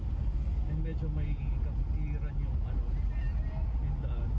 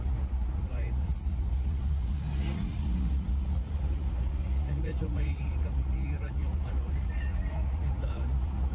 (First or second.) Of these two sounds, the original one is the first